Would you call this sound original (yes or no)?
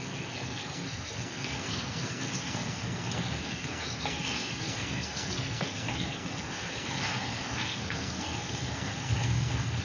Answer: no